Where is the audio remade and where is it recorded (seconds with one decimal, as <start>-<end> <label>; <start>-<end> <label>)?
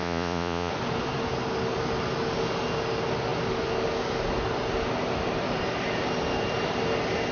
0.0-0.7 remade; 0.7-7.3 recorded